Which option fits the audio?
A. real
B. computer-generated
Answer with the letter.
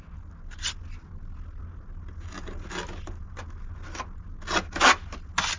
A